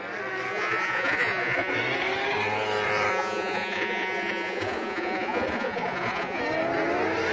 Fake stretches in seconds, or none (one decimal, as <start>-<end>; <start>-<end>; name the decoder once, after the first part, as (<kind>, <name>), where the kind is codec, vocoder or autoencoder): 0.5-1.7 (vocoder, Vocos); 3.1-6.4